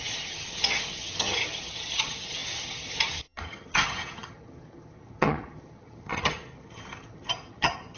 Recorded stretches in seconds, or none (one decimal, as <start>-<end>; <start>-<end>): none